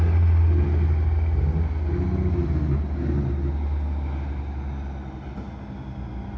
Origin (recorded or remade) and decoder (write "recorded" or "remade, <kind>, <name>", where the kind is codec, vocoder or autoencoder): recorded